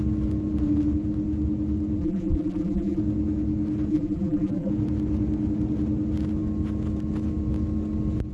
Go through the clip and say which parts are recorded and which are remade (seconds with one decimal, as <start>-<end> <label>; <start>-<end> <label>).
0.0-2.0 recorded; 2.0-3.0 remade; 3.0-3.9 recorded; 3.9-4.7 remade; 4.7-8.3 recorded